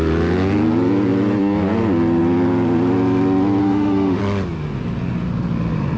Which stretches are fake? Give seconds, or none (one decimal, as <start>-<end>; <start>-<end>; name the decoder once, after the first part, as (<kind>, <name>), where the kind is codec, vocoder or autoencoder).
3.6-4.2 (autoencoder, DAC-VAE)